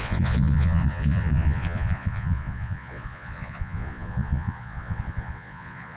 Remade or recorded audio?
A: remade